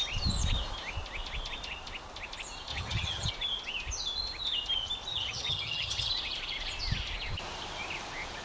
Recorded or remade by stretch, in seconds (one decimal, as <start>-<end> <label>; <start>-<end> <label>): 0.0-2.7 recorded; 2.7-3.3 remade; 3.3-5.1 recorded; 5.1-6.1 remade; 6.1-8.4 recorded

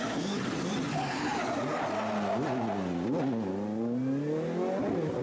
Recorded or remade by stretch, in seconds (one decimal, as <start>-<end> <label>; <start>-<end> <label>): 0.0-5.2 recorded

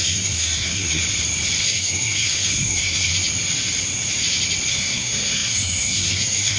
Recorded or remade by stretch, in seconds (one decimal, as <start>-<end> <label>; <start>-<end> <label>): 0.0-1.0 remade; 1.0-1.6 recorded; 1.6-3.1 remade; 3.1-4.7 recorded; 4.7-6.6 remade

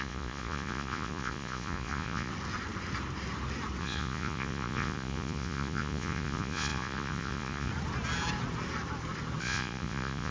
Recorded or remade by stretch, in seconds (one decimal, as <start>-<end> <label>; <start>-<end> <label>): 0.0-2.3 remade; 2.3-3.8 recorded; 3.8-7.7 remade; 7.7-9.4 recorded; 9.4-10.3 remade

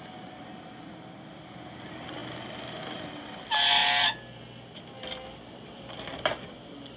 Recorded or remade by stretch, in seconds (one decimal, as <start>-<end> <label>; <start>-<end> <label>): 0.0-7.0 recorded

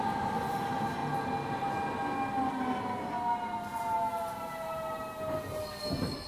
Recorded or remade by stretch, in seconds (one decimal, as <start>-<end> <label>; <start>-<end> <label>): 0.0-6.3 recorded